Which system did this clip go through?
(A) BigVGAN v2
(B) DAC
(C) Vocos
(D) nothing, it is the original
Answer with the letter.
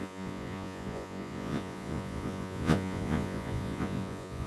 C